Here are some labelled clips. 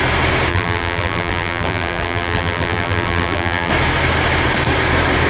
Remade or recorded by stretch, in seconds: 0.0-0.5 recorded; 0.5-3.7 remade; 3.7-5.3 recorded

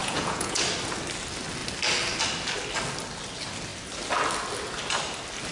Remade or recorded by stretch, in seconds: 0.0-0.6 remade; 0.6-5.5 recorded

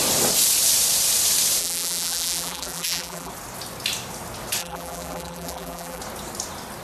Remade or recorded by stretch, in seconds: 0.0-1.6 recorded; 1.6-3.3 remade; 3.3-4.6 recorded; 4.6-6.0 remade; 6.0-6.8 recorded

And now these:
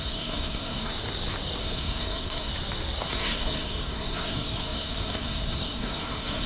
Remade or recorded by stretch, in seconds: 0.0-0.9 remade; 0.9-1.6 recorded; 1.6-2.5 remade; 2.5-3.1 recorded; 3.1-6.5 remade